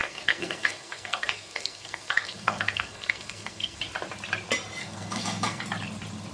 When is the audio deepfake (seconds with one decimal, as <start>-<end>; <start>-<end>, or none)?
0.0-3.8; 4.8-5.6